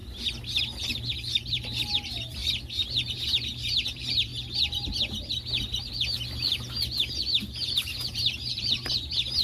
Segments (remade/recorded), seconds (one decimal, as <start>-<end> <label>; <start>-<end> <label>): 0.0-0.9 recorded; 0.9-2.4 remade; 2.4-3.1 recorded; 3.1-4.3 remade; 4.3-7.1 recorded; 7.1-9.4 remade